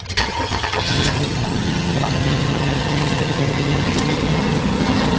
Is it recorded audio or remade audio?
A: remade